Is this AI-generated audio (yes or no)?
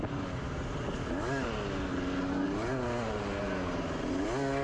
no